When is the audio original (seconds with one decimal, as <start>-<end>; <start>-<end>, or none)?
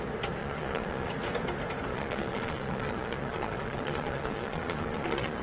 0.0-0.4; 1.1-1.9